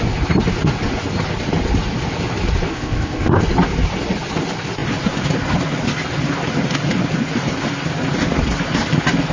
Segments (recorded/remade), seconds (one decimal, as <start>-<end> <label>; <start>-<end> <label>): 0.0-2.7 recorded; 2.7-3.4 remade; 3.4-9.3 recorded